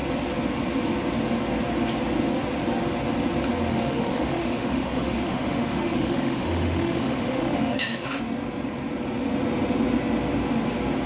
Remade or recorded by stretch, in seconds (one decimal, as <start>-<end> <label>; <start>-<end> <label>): 0.0-3.7 recorded; 3.7-8.2 remade; 8.2-11.1 recorded